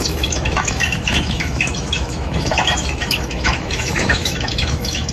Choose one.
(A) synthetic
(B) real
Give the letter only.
A